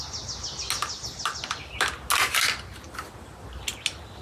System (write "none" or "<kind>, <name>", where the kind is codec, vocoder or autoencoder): none